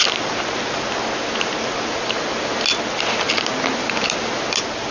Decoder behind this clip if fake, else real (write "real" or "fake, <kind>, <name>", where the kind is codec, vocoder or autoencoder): real